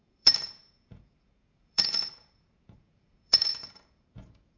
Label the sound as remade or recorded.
remade